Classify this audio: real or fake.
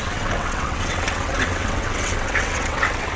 fake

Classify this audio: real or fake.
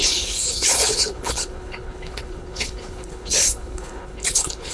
fake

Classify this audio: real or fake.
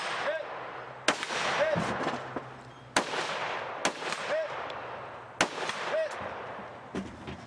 real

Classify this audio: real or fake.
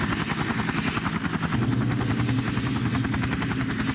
real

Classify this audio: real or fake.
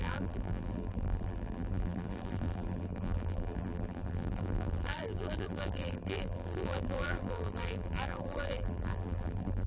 fake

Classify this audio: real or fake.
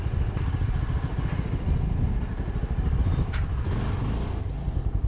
real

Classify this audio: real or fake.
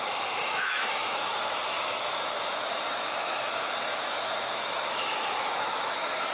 fake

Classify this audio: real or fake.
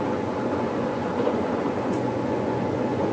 fake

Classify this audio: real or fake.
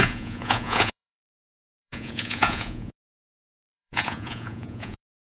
fake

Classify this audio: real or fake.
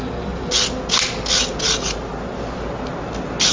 real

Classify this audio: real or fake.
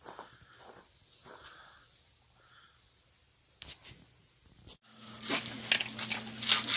real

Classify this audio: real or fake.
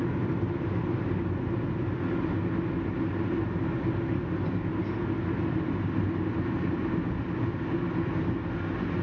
real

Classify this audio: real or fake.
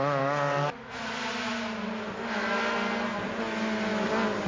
real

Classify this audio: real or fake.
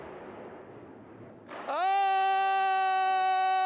real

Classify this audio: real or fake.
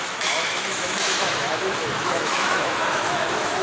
fake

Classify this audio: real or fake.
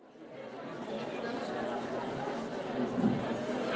real